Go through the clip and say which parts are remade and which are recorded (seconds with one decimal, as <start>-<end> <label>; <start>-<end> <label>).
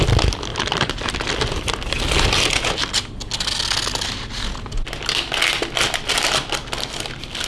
0.0-0.5 recorded; 0.5-1.1 remade; 1.1-7.5 recorded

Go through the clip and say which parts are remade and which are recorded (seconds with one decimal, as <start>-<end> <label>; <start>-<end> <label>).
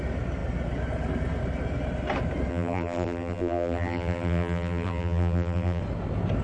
0.0-2.5 recorded; 2.5-5.8 remade; 5.8-6.4 recorded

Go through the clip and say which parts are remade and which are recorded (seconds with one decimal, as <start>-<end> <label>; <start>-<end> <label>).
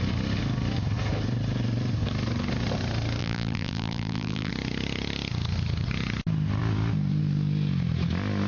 0.0-3.2 recorded; 3.2-4.5 remade; 4.5-8.5 recorded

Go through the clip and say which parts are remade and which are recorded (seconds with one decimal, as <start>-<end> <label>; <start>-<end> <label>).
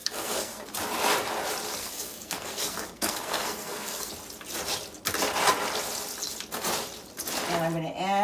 0.0-0.7 remade; 0.7-1.8 recorded; 1.8-4.1 remade; 4.1-8.2 recorded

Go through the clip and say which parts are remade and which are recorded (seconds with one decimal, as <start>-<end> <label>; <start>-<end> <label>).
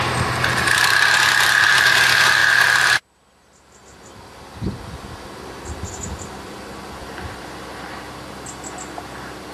0.0-9.5 recorded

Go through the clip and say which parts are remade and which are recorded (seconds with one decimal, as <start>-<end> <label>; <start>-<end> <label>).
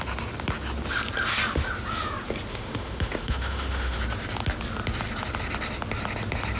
0.0-2.5 recorded; 2.5-4.0 remade; 4.0-6.6 recorded